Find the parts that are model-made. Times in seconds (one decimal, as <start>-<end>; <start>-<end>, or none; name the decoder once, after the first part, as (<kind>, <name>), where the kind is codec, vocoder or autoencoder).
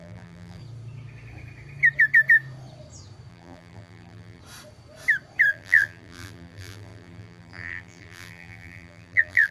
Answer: 0.0-0.6 (vocoder, BigVGAN v2); 3.3-4.4; 5.5-9.5